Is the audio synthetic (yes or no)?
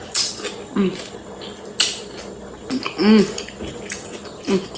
no